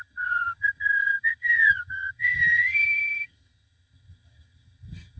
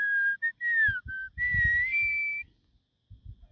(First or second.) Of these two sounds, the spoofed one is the first